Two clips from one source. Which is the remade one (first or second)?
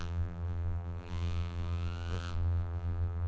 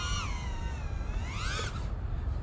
first